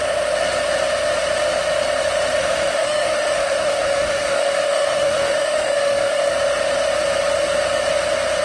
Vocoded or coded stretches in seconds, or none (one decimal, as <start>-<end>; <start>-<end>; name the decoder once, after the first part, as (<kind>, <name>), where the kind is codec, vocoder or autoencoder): 2.4-6.3 (autoencoder, DAC-VAE)

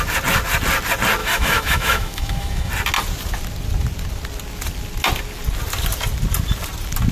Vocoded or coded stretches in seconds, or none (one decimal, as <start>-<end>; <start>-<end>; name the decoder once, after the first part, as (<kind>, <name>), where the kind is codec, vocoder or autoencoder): 1.2-2.7 (autoencoder, DAC-VAE)

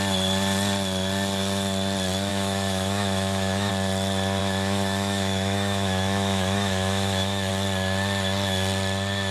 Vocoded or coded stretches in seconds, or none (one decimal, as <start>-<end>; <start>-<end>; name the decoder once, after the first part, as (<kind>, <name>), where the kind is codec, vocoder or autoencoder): 2.3-3.7 (autoencoder, DAC-VAE); 4.4-7.5